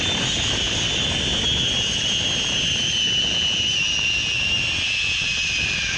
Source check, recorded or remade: recorded